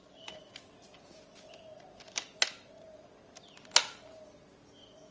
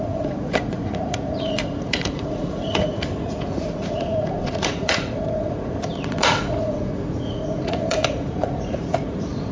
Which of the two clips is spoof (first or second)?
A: second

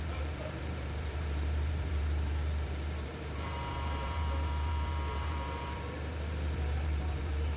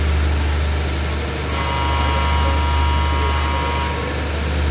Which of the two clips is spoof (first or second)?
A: first